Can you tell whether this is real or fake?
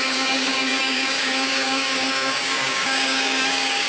fake